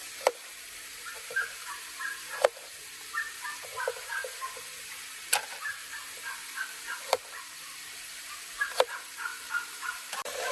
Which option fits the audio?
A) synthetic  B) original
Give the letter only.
A